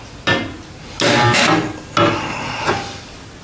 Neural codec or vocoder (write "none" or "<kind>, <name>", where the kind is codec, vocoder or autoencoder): none